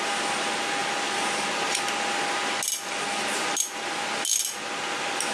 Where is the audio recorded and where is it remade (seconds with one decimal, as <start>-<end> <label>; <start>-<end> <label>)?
0.0-5.3 recorded